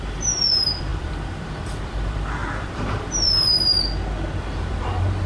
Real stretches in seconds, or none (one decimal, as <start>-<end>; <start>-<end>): 3.7-4.4